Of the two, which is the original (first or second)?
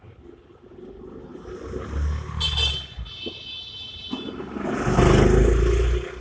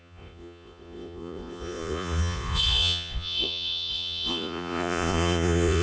first